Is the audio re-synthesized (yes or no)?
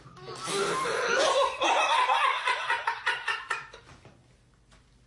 no